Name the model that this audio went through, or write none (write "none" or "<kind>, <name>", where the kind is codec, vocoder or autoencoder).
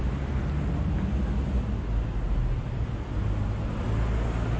none